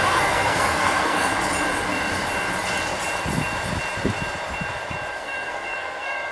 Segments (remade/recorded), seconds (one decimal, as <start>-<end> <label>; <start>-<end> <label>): 0.0-1.3 remade; 1.3-5.1 recorded; 5.1-6.3 remade

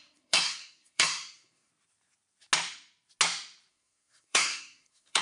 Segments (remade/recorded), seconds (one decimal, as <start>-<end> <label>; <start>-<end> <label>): 0.0-1.7 remade; 1.7-3.7 recorded; 3.7-5.2 remade

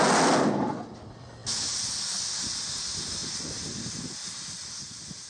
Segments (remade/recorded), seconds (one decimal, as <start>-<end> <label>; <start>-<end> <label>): 0.0-5.3 recorded

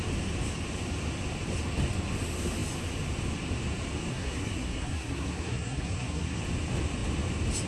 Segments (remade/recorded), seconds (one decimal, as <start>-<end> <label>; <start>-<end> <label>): 0.0-4.1 recorded; 4.1-6.4 remade; 6.4-7.7 recorded

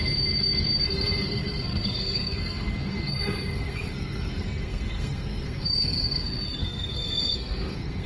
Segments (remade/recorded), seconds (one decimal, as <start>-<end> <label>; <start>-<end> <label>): 0.0-0.7 recorded; 0.7-8.1 remade

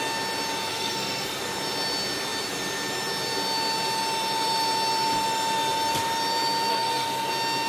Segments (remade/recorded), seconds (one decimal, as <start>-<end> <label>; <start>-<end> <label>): 0.0-0.7 recorded; 0.7-1.4 remade; 1.4-6.7 recorded; 6.7-7.3 remade; 7.3-7.7 recorded

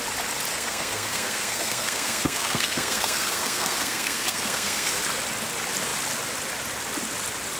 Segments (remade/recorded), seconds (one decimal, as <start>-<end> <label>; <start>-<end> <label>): 0.0-0.5 recorded; 0.5-5.0 remade; 5.0-7.6 recorded

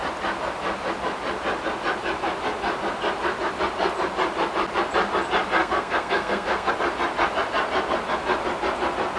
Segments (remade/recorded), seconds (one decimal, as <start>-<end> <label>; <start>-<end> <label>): 0.0-5.6 recorded; 5.6-6.7 remade; 6.7-9.2 recorded